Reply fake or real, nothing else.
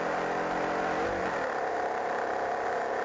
real